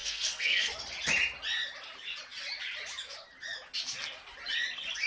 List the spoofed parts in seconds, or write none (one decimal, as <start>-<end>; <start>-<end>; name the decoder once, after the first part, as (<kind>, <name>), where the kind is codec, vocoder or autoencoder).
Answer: 0.0-0.7 (codec, SNAC)